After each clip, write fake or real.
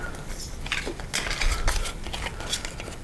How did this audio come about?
real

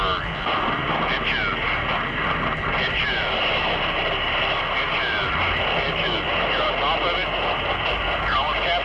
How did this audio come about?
real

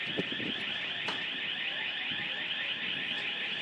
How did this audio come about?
real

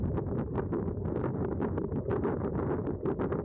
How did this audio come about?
fake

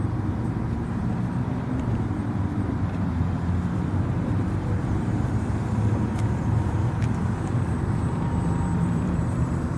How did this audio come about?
fake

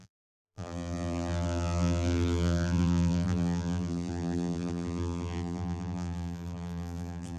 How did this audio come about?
fake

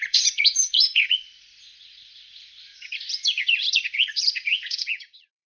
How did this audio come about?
fake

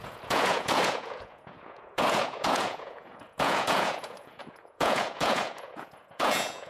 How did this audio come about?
fake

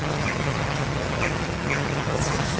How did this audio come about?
fake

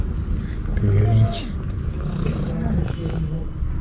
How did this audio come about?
real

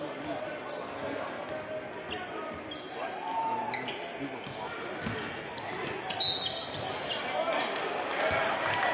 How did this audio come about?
real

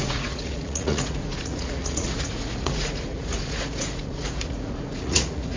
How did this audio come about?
fake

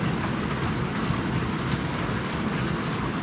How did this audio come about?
real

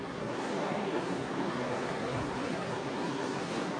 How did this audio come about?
fake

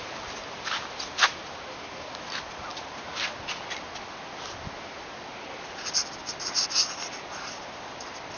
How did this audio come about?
real